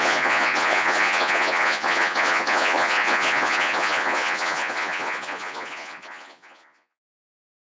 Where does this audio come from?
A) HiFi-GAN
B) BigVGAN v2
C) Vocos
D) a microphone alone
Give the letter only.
C